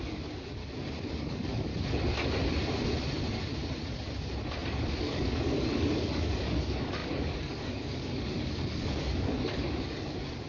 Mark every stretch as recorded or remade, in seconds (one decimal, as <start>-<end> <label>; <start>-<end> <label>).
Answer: 0.0-0.6 remade; 0.6-1.1 recorded; 1.1-1.7 remade; 1.7-5.0 recorded; 5.0-10.5 remade